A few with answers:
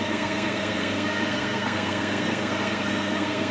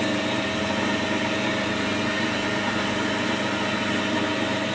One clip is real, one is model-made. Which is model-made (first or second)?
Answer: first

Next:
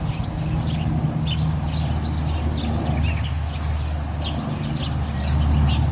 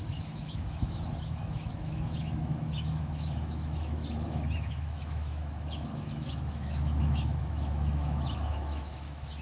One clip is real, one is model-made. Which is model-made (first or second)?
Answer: second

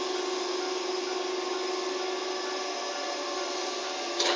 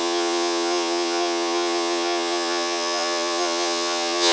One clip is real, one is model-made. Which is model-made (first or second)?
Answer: second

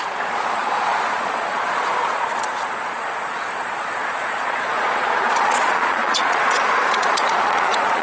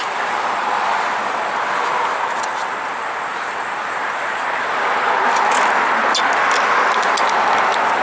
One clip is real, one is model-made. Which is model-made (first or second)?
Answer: first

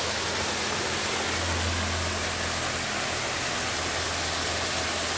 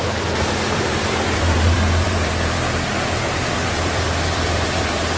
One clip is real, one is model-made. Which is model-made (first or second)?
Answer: second